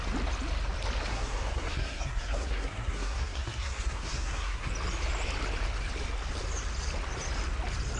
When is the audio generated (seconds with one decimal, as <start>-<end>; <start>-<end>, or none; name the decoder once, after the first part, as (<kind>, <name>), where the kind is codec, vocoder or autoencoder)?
1.1-4.7 (codec, SNAC)